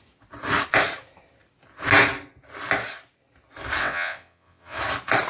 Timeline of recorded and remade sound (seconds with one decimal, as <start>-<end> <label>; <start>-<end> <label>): 0.0-3.8 recorded; 3.8-4.8 remade; 4.8-5.3 recorded